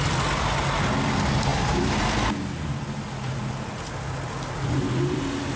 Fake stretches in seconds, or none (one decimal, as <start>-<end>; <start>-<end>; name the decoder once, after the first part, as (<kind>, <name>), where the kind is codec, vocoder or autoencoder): none